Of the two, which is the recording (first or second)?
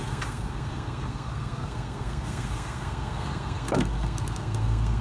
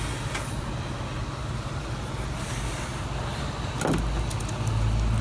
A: second